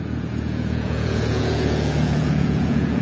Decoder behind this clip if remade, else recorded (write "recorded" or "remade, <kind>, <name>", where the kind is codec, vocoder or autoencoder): remade, vocoder, Vocos